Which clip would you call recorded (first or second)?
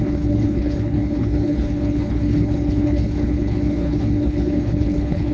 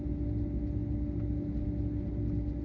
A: second